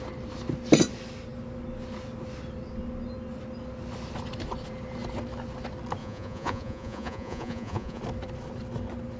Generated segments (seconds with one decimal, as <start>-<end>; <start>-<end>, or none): 6.0-8.0